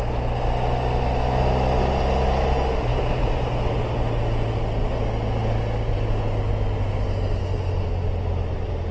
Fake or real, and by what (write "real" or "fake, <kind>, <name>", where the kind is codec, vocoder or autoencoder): real